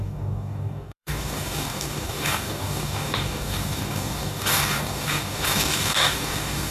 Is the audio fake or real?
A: fake